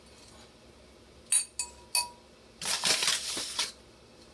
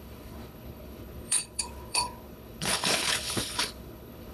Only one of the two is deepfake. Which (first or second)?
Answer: second